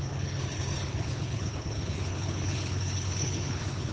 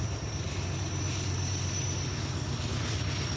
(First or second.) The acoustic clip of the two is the second